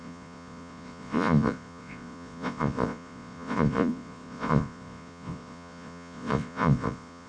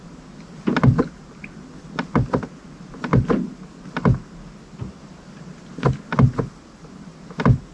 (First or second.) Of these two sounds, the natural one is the second